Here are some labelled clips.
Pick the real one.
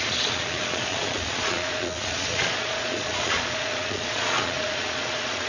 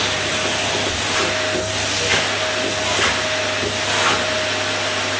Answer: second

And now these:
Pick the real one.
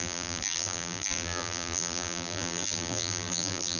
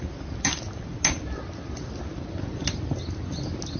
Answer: second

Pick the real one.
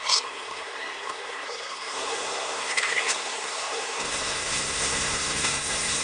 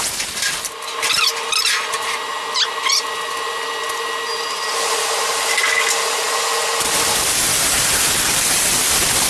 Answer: second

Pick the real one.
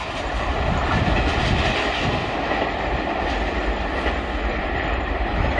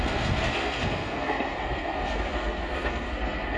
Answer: first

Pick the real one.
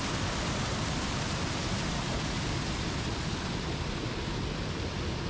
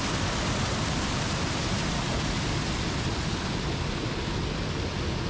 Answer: second